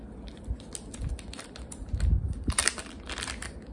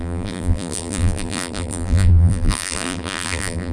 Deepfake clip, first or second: second